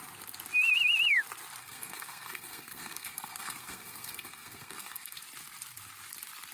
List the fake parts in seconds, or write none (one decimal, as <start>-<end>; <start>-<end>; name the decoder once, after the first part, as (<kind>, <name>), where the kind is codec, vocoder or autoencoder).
1.6-5.2 (codec, SNAC)